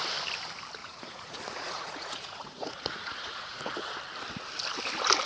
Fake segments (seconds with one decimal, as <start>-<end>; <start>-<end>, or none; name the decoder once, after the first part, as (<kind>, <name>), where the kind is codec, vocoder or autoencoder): 0.8-4.0 (vocoder, Vocos)